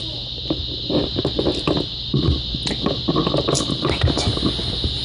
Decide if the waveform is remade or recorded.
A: recorded